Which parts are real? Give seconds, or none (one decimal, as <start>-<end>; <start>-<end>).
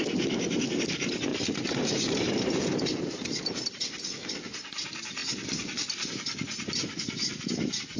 0.0-1.3; 3.4-8.0